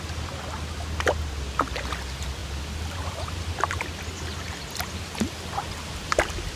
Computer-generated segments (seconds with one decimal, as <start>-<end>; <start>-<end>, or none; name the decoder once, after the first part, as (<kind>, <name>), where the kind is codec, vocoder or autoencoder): none

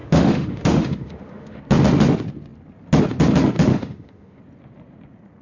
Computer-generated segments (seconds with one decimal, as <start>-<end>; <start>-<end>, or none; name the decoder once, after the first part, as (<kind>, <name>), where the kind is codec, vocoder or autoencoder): 0.0-1.6 (autoencoder, DAC-VAE); 3.7-4.4

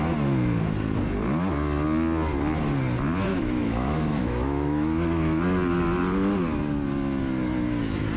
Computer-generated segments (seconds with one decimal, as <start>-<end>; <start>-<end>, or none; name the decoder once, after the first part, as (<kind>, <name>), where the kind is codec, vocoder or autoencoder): 3.3-5.4 (autoencoder, DAC-VAE)

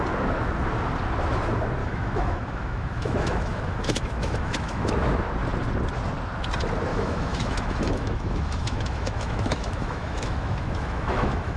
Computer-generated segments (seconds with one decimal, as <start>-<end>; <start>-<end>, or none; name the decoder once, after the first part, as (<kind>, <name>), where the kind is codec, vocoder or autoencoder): 1.8-4.9 (autoencoder, DAC-VAE); 6.9-11.6

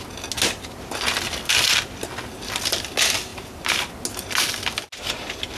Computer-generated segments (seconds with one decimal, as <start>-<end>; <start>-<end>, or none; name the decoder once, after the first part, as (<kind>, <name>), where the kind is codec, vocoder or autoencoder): none